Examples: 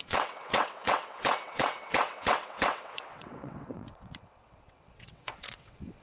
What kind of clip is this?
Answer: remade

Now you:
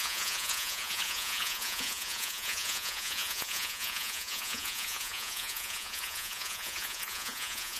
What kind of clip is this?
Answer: remade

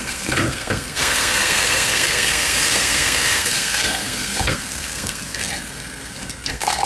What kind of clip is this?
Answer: remade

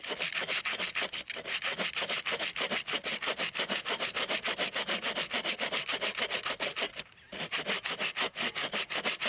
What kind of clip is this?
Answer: recorded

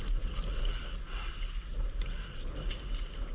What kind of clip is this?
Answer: recorded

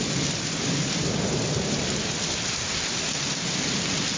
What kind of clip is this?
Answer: recorded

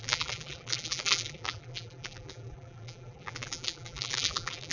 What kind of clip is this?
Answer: remade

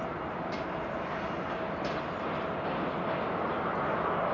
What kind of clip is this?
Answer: recorded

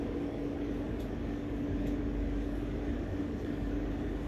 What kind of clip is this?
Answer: remade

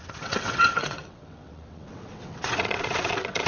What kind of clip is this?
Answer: remade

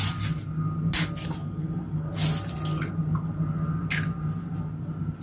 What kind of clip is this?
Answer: recorded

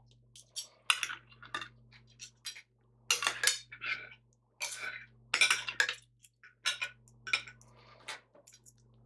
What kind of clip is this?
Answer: recorded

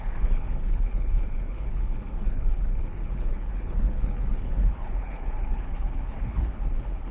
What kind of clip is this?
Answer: remade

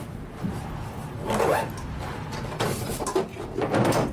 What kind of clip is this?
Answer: recorded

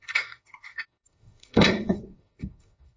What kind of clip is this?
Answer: remade